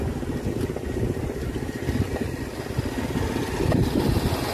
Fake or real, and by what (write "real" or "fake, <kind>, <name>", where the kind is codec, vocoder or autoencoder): real